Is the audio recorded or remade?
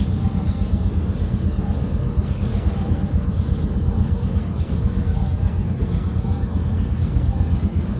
remade